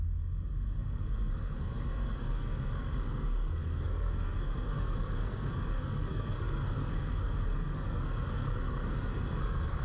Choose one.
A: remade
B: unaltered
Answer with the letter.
A